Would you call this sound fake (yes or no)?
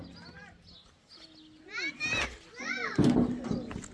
no